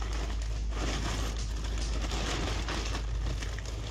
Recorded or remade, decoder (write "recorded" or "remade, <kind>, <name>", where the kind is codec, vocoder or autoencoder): recorded